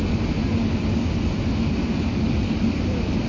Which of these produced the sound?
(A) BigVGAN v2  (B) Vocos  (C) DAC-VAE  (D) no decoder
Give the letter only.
D